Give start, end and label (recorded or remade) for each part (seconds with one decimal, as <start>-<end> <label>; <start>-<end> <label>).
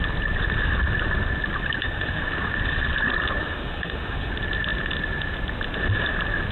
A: 0.0-1.8 recorded; 1.8-2.3 remade; 2.3-3.4 recorded; 3.4-4.3 remade; 4.3-6.5 recorded